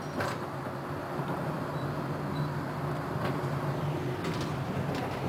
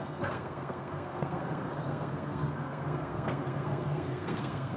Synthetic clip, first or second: second